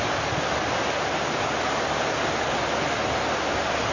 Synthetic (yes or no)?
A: no